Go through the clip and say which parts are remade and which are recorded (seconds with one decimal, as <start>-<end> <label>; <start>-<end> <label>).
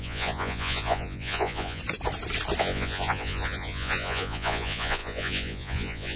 0.0-1.8 remade; 1.8-2.6 recorded; 2.6-6.2 remade